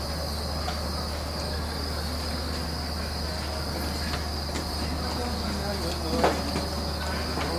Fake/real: real